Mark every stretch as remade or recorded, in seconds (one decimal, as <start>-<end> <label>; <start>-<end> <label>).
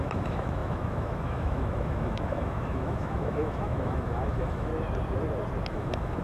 0.0-4.7 remade; 4.7-5.7 recorded; 5.7-6.2 remade